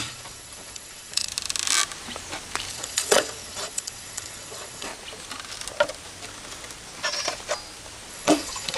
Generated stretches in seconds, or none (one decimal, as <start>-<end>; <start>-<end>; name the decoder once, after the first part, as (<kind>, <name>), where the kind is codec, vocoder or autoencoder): 0.0-1.3 (vocoder, Vocos); 2.7-4.9; 8.1-8.8